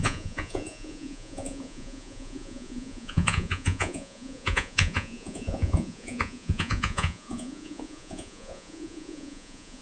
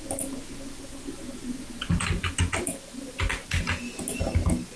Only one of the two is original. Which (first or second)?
second